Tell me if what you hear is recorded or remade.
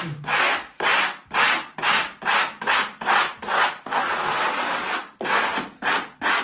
recorded